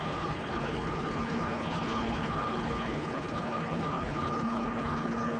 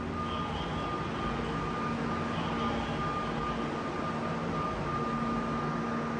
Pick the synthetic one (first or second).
first